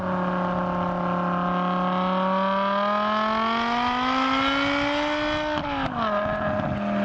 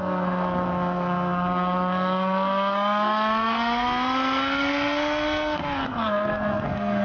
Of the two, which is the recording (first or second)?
first